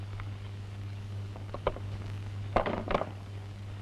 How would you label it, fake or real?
fake